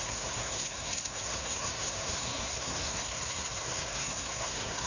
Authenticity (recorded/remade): remade